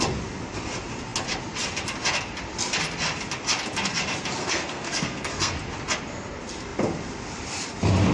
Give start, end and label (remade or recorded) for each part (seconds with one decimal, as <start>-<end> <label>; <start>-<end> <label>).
0.0-4.4 recorded; 4.4-5.5 remade; 5.5-8.1 recorded